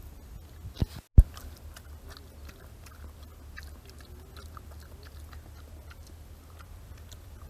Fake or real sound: real